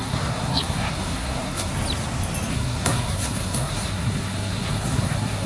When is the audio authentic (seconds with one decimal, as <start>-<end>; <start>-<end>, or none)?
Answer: 1.7-2.5